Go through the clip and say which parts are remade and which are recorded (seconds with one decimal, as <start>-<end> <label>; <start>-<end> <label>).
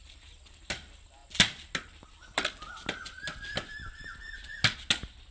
0.0-5.3 recorded